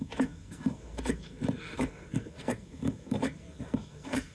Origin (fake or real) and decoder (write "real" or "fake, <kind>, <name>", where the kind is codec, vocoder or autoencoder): fake, codec, SNAC